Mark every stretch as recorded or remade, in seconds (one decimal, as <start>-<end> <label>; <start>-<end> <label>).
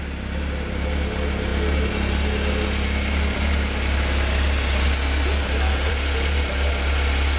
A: 0.0-7.4 recorded